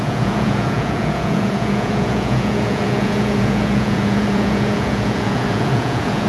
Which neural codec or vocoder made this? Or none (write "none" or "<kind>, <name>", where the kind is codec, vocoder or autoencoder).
vocoder, Vocos